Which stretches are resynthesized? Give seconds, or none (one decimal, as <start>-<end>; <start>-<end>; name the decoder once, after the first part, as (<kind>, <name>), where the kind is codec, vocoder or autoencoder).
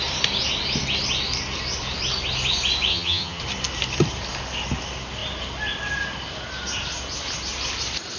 2.9-3.4 (vocoder, HiFi-GAN)